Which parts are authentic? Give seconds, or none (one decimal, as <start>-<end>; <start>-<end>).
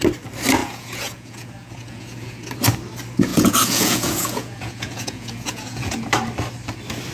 0.0-0.6; 2.5-3.3; 6.1-7.1